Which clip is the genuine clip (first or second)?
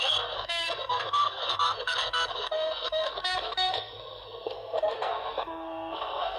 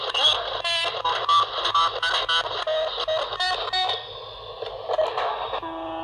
second